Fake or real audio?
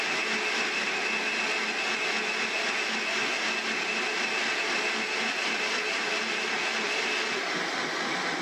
real